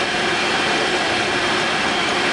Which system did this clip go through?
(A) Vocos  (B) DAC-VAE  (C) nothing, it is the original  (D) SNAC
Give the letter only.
C